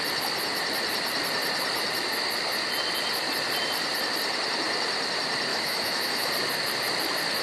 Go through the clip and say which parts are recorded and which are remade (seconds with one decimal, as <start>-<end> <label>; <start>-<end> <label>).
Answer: 0.0-5.5 recorded; 5.5-6.3 remade; 6.3-7.4 recorded